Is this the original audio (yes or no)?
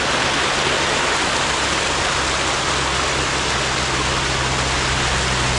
yes